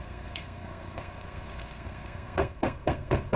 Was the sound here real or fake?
fake